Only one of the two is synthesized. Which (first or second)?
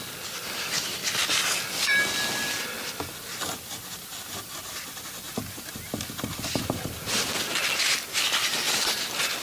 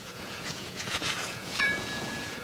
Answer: second